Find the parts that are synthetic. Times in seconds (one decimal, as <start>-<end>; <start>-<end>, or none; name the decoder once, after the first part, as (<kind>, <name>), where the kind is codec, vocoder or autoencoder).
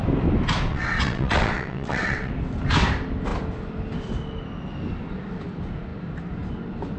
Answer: 0.7-2.3 (vocoder, WaveNeXt)